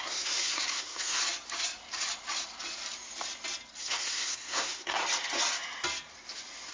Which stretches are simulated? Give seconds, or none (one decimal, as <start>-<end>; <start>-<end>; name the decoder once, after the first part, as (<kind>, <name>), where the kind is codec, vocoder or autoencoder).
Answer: 0.0-1.2 (codec, SNAC); 3.8-5.0